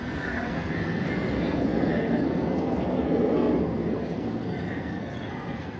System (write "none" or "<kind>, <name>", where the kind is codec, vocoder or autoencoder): codec, SNAC